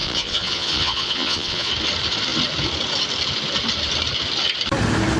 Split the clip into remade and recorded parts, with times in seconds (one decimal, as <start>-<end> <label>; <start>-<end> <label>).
0.0-1.7 remade; 1.7-5.2 recorded